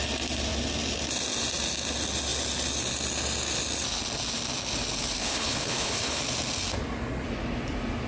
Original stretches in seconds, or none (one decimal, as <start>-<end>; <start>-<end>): 0.0-5.2; 6.2-8.1